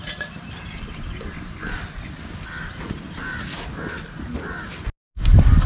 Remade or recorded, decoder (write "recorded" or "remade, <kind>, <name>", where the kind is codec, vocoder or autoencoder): recorded